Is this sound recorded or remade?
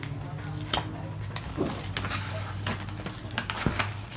recorded